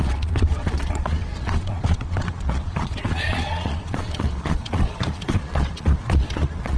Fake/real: fake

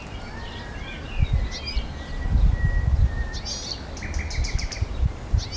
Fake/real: real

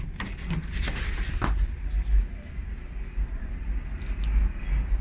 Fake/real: real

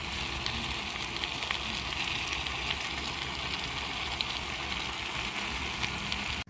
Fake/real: real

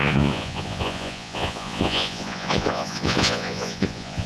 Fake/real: fake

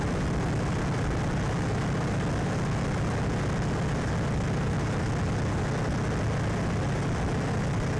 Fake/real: real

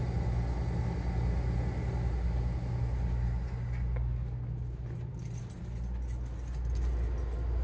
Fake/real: real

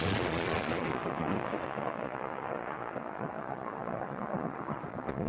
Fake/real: fake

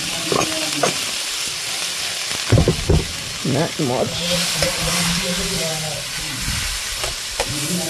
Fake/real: real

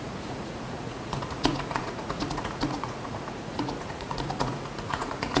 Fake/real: fake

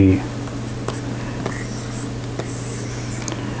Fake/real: real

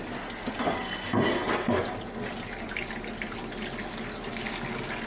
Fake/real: real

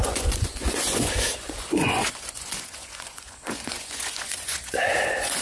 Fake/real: fake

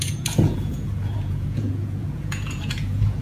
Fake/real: fake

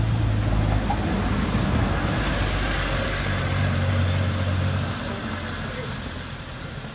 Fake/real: real